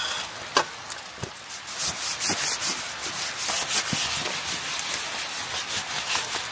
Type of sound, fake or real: real